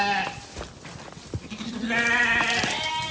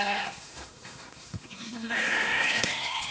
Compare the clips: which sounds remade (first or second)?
second